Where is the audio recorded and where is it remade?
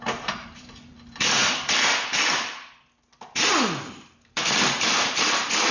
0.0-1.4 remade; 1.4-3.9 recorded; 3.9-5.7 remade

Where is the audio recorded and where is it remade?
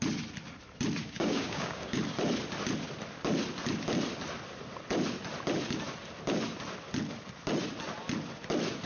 0.0-1.0 recorded; 1.0-2.0 remade; 2.0-8.9 recorded